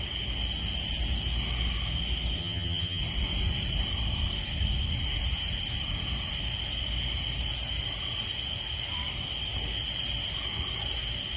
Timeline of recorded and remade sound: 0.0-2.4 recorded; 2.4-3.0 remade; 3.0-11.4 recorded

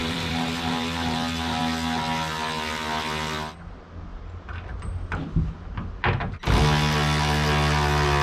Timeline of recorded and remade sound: 0.0-1.6 remade; 1.6-4.1 recorded; 4.1-4.8 remade; 4.8-8.2 recorded